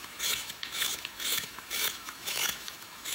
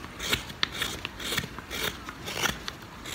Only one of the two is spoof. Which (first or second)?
first